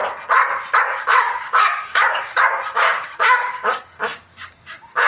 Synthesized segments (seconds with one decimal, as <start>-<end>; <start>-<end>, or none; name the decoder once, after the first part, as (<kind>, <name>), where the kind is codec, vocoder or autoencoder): 0.8-5.1 (codec, DAC)